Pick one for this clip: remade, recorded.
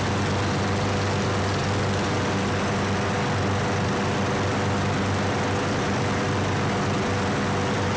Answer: recorded